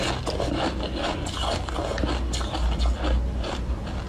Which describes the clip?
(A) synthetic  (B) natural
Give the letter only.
B